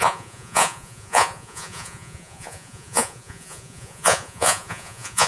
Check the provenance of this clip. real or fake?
fake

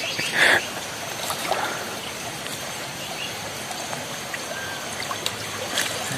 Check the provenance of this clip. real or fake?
fake